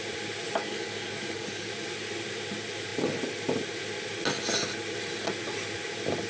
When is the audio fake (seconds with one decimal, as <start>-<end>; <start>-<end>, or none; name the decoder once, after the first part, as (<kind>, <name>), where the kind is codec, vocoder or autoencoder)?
0.6-1.7 (codec, DAC)